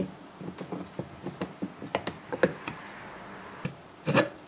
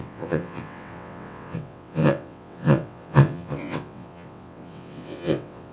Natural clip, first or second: first